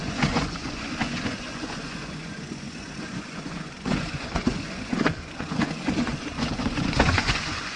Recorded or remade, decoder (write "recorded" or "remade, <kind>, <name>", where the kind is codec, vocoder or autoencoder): remade, vocoder, Vocos